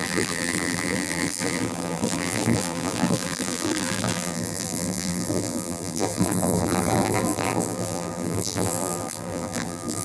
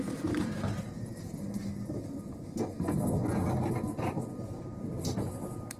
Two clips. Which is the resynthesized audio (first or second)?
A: first